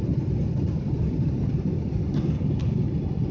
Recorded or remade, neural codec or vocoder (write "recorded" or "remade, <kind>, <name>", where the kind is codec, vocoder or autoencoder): recorded